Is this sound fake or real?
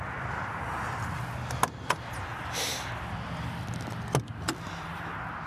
real